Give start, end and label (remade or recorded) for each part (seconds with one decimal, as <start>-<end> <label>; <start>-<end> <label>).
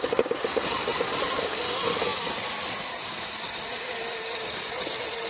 0.0-5.3 recorded